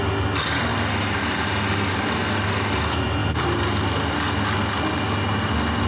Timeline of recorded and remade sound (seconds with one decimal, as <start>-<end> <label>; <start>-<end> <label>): 0.0-5.9 recorded